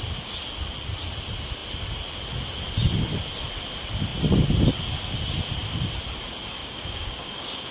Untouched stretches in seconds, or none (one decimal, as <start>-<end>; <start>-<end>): 0.0-6.6